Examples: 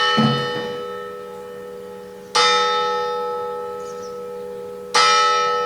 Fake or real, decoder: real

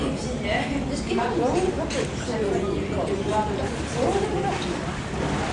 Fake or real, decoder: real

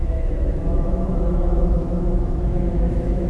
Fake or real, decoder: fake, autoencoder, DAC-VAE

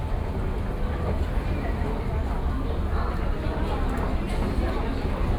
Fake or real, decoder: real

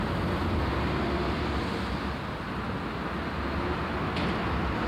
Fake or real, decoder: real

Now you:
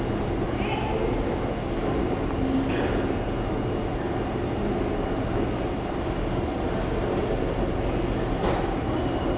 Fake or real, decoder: real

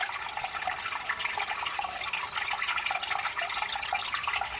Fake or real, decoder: real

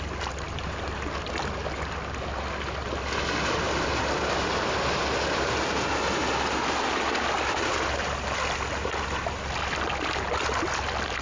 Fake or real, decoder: real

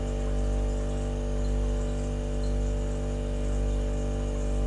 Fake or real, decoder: real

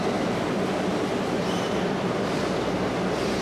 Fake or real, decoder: real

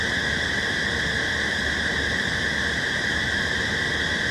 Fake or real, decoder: real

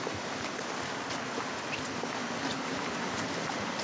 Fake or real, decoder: real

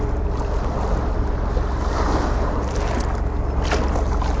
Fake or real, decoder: real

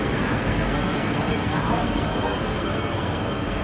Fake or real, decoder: fake, codec, SNAC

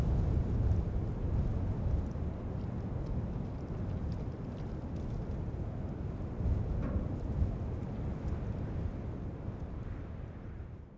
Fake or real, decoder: real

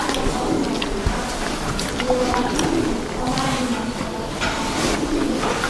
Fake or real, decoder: real